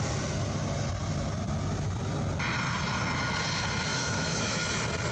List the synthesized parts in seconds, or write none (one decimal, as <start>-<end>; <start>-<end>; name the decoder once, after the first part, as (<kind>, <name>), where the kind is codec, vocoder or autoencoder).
3.9-4.6 (autoencoder, DAC-VAE)